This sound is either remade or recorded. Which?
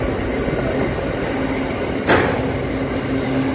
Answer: recorded